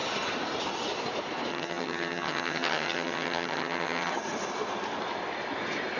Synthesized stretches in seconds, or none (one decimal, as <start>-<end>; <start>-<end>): 1.5-4.1